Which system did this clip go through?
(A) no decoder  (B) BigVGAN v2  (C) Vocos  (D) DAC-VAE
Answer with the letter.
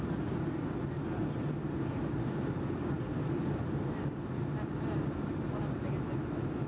A